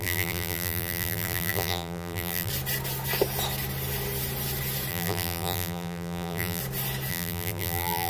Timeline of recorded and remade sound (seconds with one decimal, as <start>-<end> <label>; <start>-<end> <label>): 0.0-2.5 remade; 2.5-4.9 recorded; 4.9-6.6 remade; 6.6-7.1 recorded; 7.1-8.1 remade